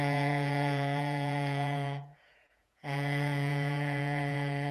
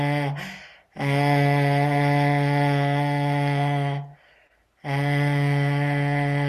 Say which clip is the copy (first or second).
first